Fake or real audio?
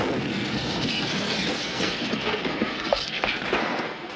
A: fake